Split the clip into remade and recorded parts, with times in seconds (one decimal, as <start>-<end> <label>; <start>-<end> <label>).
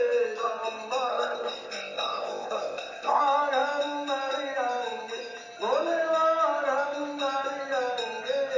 0.0-1.1 recorded; 1.1-3.2 remade; 3.2-8.6 recorded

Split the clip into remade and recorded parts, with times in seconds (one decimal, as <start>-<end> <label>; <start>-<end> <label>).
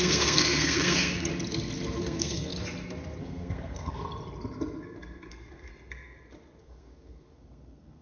0.0-1.3 remade; 1.3-2.0 recorded; 2.0-2.5 remade; 2.5-3.2 recorded; 3.2-4.0 remade; 4.0-5.3 recorded; 5.3-5.7 remade; 5.7-6.6 recorded; 6.6-8.0 remade